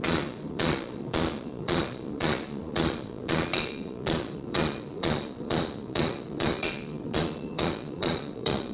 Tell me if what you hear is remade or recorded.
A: remade